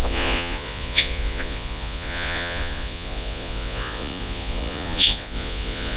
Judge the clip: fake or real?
fake